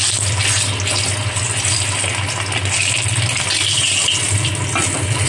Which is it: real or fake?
real